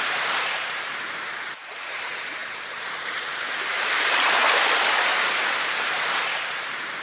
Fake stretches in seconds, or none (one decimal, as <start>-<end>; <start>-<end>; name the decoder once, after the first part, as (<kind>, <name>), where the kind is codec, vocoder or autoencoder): 0.0-7.0 (vocoder, BigVGAN v2)